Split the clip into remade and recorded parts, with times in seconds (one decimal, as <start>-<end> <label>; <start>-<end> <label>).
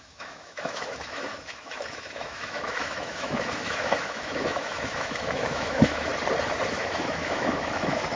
0.0-6.1 remade; 6.1-6.7 recorded; 6.7-8.2 remade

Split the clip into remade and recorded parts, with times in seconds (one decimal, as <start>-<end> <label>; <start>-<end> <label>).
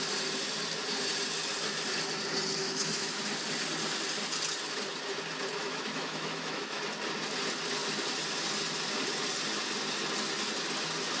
0.0-2.6 recorded; 2.6-3.2 remade; 3.2-5.6 recorded; 5.6-6.8 remade; 6.8-11.2 recorded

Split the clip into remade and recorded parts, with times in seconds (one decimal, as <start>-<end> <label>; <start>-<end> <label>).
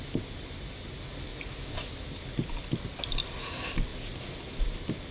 0.0-1.3 recorded; 1.3-2.2 remade; 2.2-5.1 recorded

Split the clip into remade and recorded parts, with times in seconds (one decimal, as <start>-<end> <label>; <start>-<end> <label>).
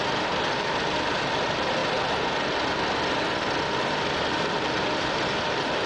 0.0-5.9 recorded